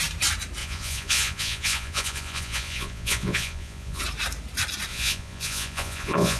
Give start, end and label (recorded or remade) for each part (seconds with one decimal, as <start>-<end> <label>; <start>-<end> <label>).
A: 0.0-0.6 recorded; 0.6-4.0 remade; 4.0-4.9 recorded; 4.9-6.4 remade